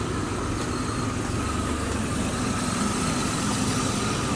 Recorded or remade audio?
recorded